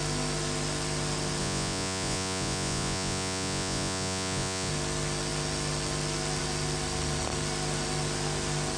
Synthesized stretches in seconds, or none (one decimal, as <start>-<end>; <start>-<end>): 1.4-4.7